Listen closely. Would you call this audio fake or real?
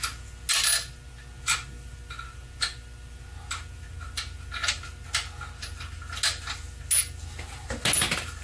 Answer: real